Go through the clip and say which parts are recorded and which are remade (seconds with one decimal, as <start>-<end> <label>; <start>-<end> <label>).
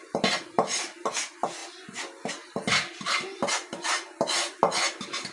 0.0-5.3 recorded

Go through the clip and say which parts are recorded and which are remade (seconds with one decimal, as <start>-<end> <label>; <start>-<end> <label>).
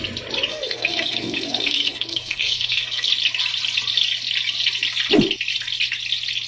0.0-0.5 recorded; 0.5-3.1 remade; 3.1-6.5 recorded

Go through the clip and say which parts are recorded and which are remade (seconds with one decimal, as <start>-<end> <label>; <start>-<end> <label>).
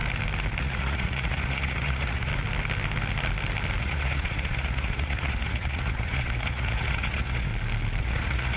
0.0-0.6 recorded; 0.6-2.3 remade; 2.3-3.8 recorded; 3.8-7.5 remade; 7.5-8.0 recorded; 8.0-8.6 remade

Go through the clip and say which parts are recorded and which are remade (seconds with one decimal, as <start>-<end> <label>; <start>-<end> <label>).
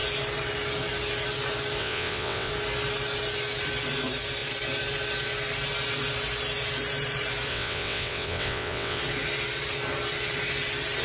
0.0-1.8 recorded; 1.8-2.5 remade; 2.5-7.5 recorded; 7.5-9.0 remade; 9.0-11.0 recorded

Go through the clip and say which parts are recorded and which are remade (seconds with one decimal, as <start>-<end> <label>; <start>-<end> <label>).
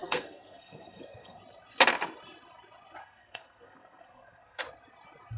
0.0-1.4 remade; 1.4-3.0 recorded; 3.0-4.6 remade; 4.6-5.4 recorded